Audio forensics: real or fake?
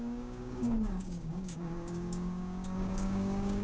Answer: fake